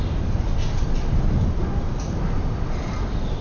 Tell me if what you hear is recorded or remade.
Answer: recorded